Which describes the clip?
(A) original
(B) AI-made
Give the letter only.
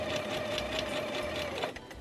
A